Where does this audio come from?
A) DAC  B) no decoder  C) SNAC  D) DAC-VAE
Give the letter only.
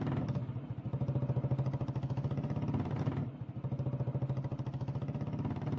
B